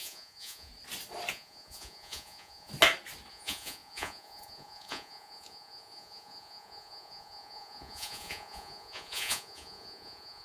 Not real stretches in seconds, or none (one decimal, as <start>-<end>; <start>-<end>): 0.0-0.7; 1.3-2.7; 3.3-10.4